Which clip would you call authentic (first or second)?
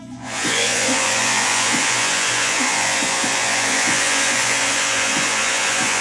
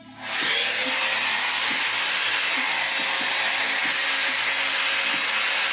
second